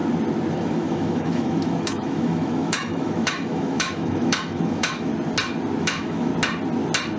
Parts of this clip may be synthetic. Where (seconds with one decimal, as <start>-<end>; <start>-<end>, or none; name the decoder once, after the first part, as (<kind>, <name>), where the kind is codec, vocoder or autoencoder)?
0.5-5.1 (autoencoder, DAC-VAE); 5.8-6.3